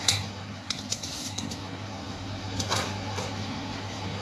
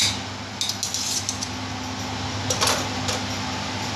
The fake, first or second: first